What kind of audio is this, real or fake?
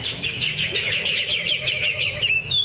fake